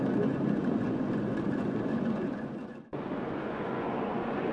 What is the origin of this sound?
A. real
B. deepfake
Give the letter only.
B